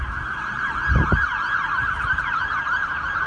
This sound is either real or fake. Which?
real